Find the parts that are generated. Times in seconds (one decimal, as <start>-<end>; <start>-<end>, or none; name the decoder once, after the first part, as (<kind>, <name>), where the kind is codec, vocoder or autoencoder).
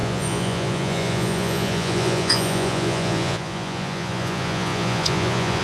0.0-5.6 (vocoder, Vocos)